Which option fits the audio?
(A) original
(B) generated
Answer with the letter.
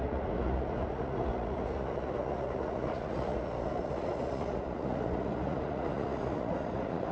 B